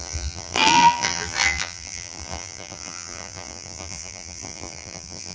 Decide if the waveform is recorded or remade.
remade